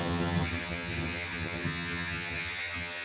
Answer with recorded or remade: remade